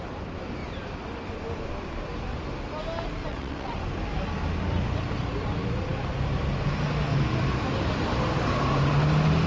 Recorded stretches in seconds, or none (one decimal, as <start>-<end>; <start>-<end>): 0.0-3.2; 3.8-9.5